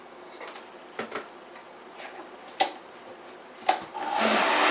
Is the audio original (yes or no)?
yes